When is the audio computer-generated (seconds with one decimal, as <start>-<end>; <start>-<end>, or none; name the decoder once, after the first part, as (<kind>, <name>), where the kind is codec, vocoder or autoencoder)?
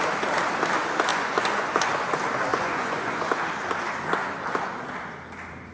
1.1-1.9 (vocoder, Vocos); 2.5-3.3